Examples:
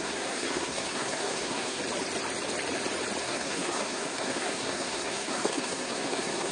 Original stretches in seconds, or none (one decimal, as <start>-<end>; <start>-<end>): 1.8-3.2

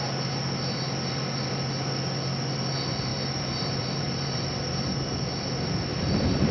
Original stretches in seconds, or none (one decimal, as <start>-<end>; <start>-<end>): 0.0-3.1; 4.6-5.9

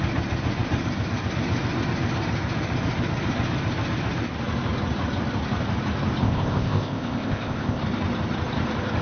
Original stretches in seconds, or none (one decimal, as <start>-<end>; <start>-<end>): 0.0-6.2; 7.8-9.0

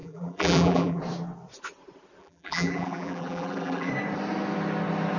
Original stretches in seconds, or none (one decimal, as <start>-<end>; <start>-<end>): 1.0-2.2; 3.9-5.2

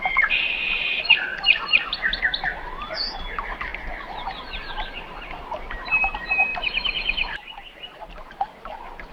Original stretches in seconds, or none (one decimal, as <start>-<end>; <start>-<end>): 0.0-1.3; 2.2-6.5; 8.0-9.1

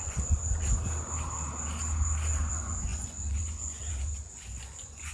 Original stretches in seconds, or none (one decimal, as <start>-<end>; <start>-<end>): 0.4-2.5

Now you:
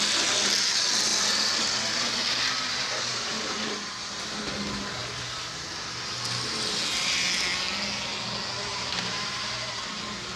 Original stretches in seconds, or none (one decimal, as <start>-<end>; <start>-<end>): 0.0-3.1; 4.4-8.7; 9.8-10.4